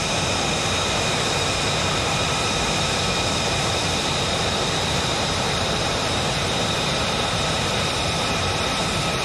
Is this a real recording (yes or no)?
no